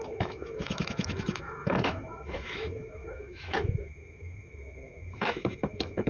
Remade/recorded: remade